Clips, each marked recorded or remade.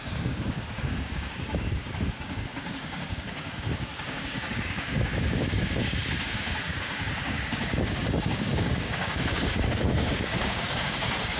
remade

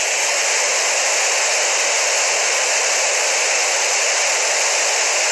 recorded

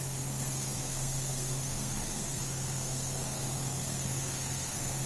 remade